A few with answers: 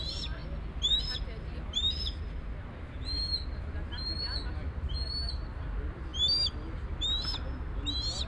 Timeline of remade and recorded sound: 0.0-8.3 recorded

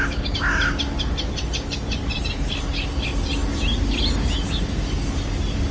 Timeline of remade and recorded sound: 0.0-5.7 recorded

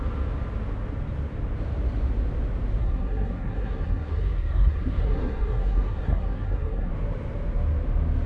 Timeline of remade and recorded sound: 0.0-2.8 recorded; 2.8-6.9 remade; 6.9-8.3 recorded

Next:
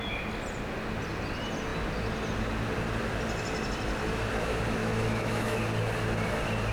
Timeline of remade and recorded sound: 0.0-4.8 recorded; 4.8-5.6 remade; 5.6-6.7 recorded

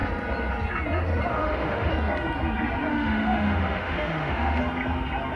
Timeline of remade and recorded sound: 0.0-1.3 recorded; 1.3-1.9 remade; 1.9-2.9 recorded; 2.9-4.6 remade; 4.6-5.4 recorded

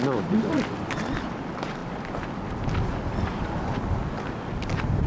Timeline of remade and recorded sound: 0.0-5.1 recorded

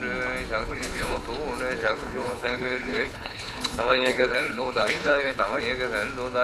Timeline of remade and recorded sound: 0.0-0.6 recorded; 0.6-1.2 remade; 1.2-1.8 recorded; 1.8-5.6 remade; 5.6-6.4 recorded